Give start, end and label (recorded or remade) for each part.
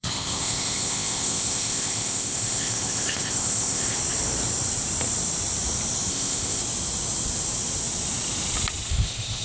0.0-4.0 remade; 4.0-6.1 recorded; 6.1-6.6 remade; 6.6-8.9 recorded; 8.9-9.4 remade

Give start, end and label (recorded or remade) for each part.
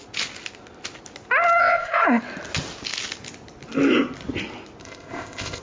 0.0-1.6 recorded; 1.6-2.2 remade; 2.2-4.8 recorded; 4.8-5.6 remade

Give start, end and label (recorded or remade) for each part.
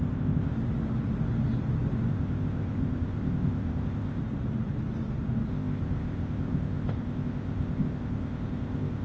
0.0-0.5 remade; 0.5-2.1 recorded; 2.1-4.2 remade; 4.2-5.5 recorded; 5.5-9.0 remade